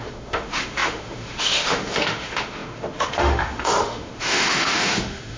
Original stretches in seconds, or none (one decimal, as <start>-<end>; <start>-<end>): none